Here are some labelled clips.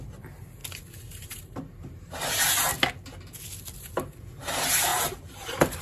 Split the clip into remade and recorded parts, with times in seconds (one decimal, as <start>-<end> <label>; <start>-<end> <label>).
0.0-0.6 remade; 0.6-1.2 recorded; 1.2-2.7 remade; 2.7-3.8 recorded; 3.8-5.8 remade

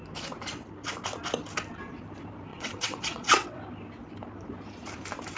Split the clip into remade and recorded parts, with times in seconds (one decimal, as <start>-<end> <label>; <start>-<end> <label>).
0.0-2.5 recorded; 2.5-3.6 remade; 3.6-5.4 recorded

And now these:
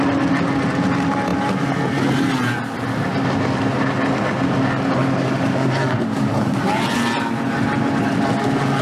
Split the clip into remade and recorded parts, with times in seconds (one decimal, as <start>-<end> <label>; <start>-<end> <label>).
0.0-5.0 recorded; 5.0-6.6 remade; 6.6-8.8 recorded

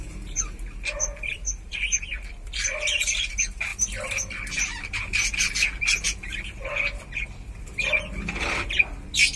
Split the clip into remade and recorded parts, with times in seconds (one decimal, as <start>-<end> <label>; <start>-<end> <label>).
0.0-1.4 recorded; 1.4-2.0 remade; 2.0-9.4 recorded

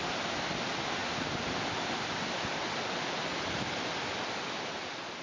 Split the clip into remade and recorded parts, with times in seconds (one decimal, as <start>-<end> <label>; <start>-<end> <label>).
0.0-5.2 recorded